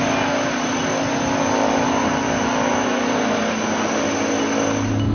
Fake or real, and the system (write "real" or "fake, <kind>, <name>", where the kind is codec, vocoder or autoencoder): real